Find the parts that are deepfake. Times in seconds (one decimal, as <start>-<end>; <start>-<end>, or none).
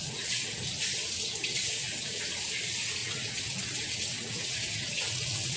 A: 0.0-0.6; 1.4-2.2; 3.0-5.6